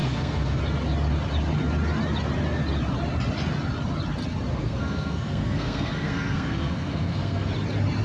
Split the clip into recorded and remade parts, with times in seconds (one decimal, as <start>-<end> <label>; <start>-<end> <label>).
0.0-0.6 remade; 0.6-4.5 recorded; 4.5-7.5 remade; 7.5-8.0 recorded